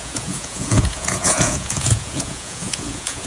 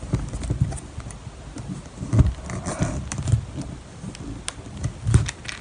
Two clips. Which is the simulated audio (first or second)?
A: first